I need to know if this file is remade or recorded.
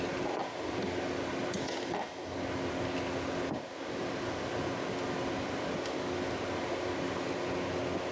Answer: recorded